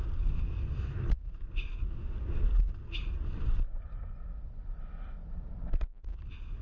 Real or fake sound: real